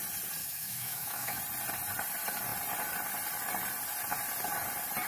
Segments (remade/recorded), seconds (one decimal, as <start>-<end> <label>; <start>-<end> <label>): 0.0-0.4 recorded; 0.4-1.4 remade; 1.4-5.1 recorded